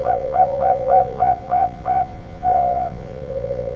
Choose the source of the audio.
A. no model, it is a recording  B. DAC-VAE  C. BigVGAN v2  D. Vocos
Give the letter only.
D